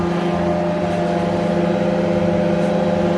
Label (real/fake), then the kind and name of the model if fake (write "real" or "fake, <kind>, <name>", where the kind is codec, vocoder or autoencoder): real